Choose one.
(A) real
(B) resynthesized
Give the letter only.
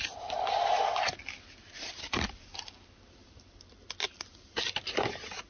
A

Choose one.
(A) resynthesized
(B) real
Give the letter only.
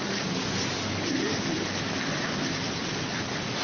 B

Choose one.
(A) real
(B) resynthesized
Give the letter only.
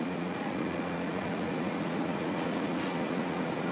B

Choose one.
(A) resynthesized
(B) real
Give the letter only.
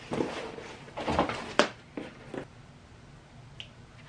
B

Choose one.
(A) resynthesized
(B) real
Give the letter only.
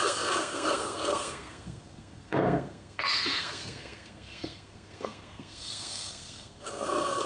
A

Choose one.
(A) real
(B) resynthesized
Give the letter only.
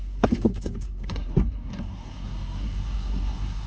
B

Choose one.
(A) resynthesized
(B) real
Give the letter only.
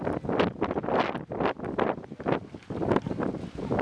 B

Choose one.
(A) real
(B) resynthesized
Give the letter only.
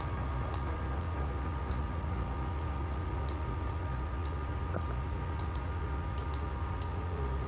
B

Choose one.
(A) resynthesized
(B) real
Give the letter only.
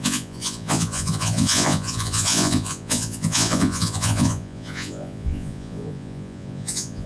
A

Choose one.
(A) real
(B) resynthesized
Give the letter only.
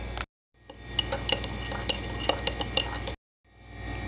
A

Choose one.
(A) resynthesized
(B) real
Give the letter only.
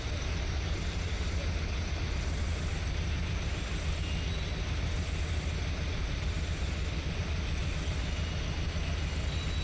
B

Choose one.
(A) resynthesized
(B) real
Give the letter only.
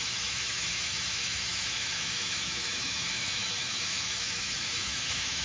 A